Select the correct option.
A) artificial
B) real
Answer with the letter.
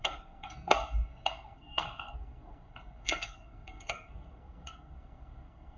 A